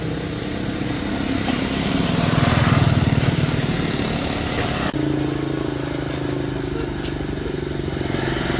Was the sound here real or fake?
real